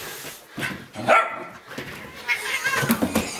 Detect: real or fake real